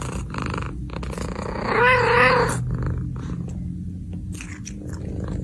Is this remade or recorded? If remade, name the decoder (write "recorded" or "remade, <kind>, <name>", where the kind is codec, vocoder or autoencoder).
recorded